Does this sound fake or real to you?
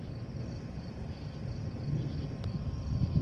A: fake